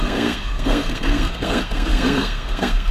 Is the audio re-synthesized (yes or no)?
yes